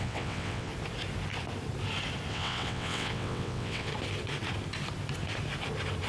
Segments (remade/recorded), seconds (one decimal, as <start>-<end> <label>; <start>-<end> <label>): 0.0-0.7 remade; 0.7-2.3 recorded; 2.3-3.9 remade; 3.9-6.1 recorded